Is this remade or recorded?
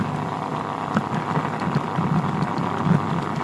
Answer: recorded